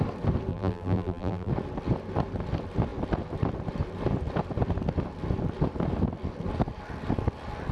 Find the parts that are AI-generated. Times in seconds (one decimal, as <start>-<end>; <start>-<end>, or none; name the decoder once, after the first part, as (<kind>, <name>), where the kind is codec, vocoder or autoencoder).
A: 0.5-1.5 (vocoder, BigVGAN v2)